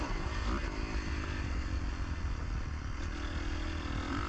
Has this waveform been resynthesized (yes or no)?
no